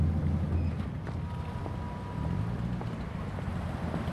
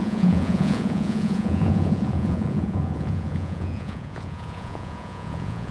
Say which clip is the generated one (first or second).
second